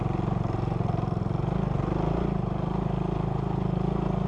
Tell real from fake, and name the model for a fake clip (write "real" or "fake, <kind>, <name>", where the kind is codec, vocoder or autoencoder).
real